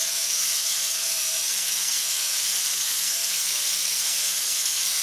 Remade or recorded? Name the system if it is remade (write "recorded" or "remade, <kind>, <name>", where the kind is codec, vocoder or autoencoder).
remade, codec, SNAC